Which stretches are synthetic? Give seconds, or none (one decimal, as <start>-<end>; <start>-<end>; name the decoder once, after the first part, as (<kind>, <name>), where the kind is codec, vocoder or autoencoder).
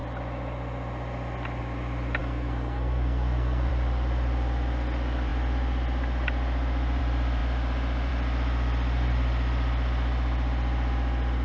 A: 2.2-3.7 (codec, SNAC)